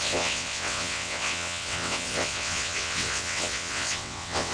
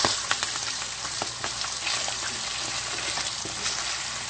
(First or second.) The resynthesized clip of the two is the first